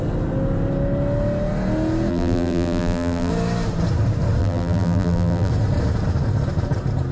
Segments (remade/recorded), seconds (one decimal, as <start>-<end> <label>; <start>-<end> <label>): 0.0-2.1 recorded; 2.1-3.3 remade; 3.3-4.4 recorded; 4.4-5.5 remade; 5.5-7.1 recorded